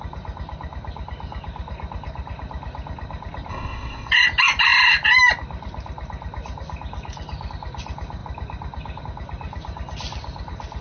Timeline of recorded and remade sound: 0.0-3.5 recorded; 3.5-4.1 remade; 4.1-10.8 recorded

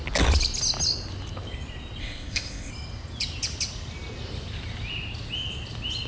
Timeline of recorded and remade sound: 0.0-2.0 recorded; 2.0-2.7 remade; 2.7-6.1 recorded